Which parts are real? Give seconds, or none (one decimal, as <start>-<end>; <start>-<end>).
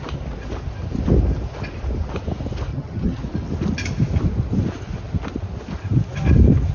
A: 0.0-2.7; 3.2-6.7